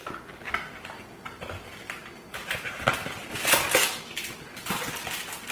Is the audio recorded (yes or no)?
yes